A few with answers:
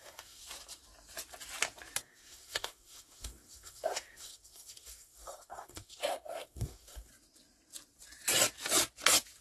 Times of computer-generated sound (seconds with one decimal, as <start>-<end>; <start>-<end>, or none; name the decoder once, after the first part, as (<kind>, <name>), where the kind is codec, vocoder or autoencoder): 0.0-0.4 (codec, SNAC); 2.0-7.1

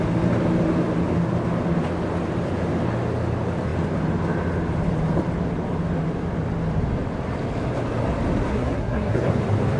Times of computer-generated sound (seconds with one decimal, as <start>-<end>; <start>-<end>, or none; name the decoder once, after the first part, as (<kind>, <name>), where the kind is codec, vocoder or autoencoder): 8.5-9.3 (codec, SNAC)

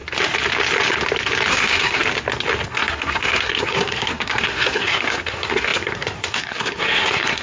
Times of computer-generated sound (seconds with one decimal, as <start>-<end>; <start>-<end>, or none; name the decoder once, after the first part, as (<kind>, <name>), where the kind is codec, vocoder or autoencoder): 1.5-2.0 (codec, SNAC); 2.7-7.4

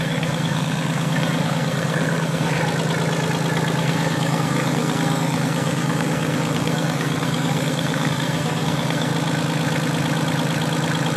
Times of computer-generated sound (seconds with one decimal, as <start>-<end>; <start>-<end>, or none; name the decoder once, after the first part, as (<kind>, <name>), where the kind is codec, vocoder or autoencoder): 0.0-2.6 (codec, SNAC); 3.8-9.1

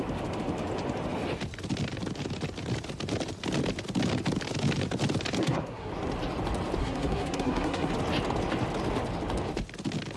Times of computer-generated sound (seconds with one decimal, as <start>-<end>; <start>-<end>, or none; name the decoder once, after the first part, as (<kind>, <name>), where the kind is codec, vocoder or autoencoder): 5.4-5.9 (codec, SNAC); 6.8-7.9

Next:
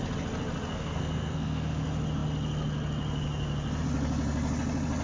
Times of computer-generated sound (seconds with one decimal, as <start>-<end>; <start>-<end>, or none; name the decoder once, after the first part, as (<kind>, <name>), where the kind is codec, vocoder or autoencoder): 0.7-1.8 (codec, SNAC)